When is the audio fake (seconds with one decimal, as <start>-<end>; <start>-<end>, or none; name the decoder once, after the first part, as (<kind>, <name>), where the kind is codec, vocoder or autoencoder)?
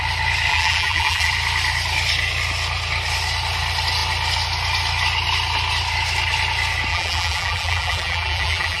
0.5-1.3 (vocoder, BigVGAN v2); 6.9-8.8